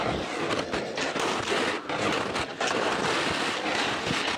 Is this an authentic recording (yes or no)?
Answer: yes